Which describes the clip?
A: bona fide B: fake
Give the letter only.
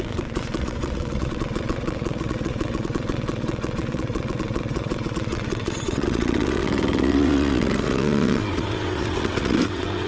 B